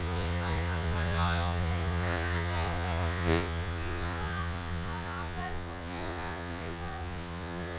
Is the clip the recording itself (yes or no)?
no